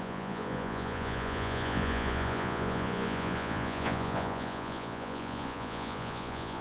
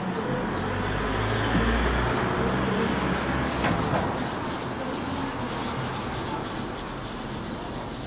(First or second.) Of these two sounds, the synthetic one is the first